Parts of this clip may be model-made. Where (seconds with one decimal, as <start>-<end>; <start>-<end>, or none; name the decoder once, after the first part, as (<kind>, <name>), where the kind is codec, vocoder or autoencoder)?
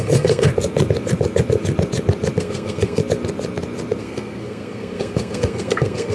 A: 0.0-0.5 (codec, SNAC); 2.4-3.0; 4.0-6.1